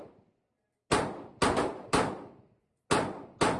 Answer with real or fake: real